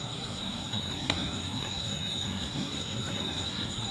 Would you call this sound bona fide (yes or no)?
no